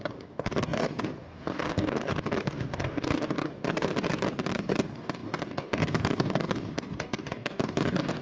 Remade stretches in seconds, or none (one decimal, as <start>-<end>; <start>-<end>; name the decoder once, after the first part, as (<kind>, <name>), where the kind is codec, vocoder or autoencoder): 0.0-3.9 (codec, DAC); 4.5-8.2